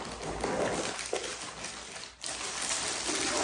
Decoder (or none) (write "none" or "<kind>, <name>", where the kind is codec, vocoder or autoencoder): none